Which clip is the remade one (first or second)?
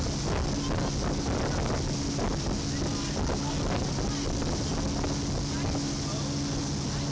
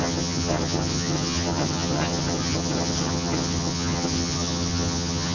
second